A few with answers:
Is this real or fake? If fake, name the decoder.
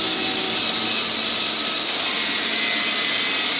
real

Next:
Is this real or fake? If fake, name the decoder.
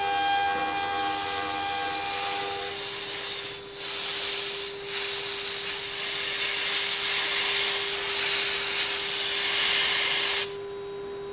real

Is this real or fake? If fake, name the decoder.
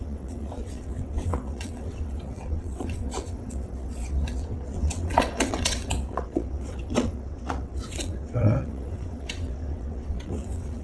fake, vocoder, WaveNeXt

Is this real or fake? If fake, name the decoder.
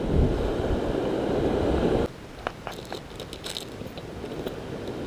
real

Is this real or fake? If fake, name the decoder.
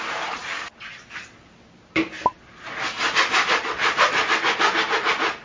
real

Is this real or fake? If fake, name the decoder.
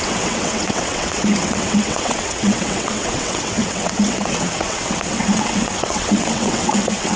fake, vocoder, WaveNeXt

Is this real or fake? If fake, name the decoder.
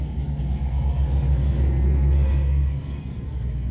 fake, codec, SNAC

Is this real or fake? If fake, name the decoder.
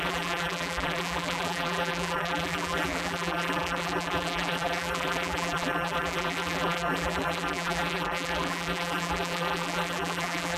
fake, vocoder, BigVGAN v2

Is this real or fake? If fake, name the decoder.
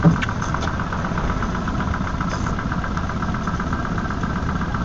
real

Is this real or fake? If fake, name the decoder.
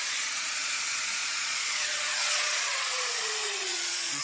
fake, vocoder, Vocos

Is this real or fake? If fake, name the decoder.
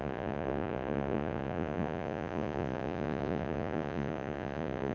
fake, vocoder, Vocos